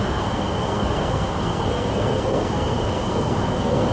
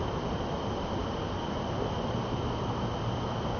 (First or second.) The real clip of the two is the second